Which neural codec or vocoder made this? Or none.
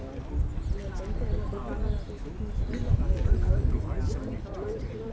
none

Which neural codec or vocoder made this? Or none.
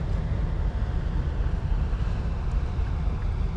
none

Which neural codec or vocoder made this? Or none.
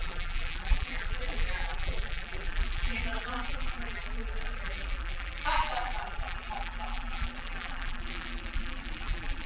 vocoder, BigVGAN v2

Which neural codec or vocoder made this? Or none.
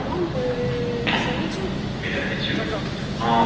none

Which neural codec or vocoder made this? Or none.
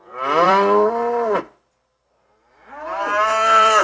vocoder, BigVGAN v2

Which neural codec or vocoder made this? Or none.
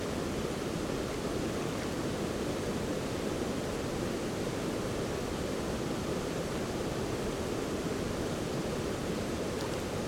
vocoder, BigVGAN v2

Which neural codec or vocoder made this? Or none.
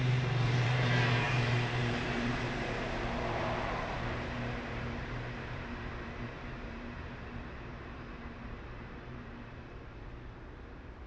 vocoder, BigVGAN v2